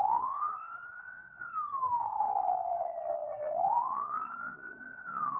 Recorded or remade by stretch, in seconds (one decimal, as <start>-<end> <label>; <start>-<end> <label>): 0.0-1.5 remade; 1.5-2.0 recorded; 2.0-5.4 remade